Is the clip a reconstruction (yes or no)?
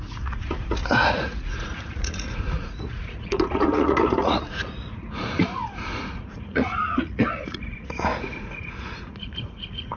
yes